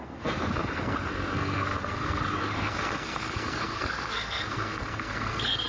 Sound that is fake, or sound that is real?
fake